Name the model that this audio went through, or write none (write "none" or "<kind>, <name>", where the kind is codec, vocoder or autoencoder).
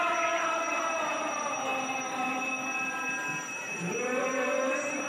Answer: none